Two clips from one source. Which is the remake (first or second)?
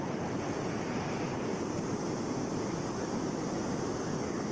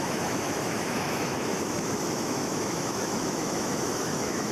second